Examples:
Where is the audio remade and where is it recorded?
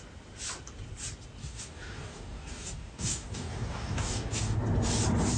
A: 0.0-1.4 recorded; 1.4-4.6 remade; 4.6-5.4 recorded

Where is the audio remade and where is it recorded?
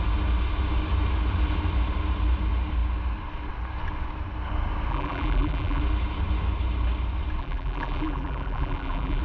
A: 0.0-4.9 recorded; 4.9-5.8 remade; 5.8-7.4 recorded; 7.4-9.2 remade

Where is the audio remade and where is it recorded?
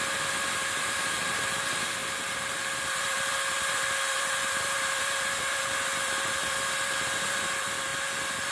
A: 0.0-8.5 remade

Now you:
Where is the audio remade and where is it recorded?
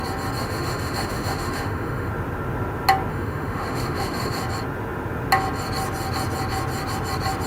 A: 0.0-0.4 recorded; 0.4-2.1 remade; 2.1-3.1 recorded; 3.1-4.4 remade; 4.4-7.5 recorded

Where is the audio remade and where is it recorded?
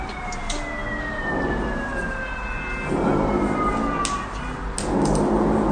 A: 0.0-5.7 recorded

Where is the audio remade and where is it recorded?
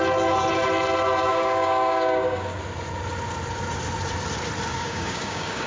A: 0.0-1.3 recorded; 1.3-2.6 remade; 2.6-4.7 recorded; 4.7-5.7 remade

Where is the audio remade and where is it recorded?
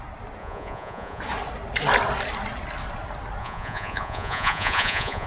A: 0.0-0.4 recorded; 0.4-1.2 remade; 1.2-3.4 recorded; 3.4-5.3 remade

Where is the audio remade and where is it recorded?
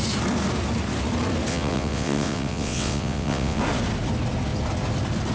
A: 0.0-1.5 recorded; 1.5-3.6 remade; 3.6-5.3 recorded